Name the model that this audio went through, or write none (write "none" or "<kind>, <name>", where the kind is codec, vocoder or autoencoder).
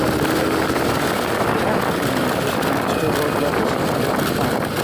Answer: none